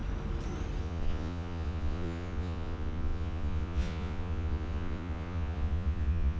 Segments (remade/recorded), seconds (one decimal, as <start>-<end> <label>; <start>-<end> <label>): 0.0-0.8 recorded; 0.8-6.4 remade